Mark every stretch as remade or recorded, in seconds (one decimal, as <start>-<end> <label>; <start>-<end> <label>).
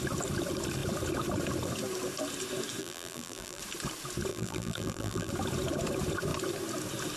0.0-2.8 recorded; 2.8-3.6 remade; 3.6-4.3 recorded; 4.3-5.3 remade; 5.3-7.2 recorded